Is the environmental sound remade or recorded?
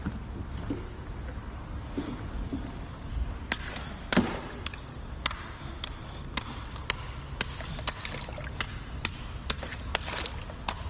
recorded